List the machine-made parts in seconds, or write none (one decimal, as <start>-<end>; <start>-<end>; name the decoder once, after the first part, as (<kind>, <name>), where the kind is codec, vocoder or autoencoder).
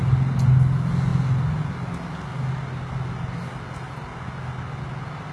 none